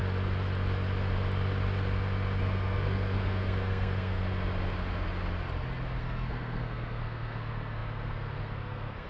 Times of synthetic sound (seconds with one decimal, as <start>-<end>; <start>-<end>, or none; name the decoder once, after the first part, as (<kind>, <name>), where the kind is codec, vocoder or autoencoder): 2.4-4.2 (codec, SNAC); 6.0-9.1